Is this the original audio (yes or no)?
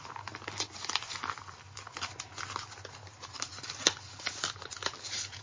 yes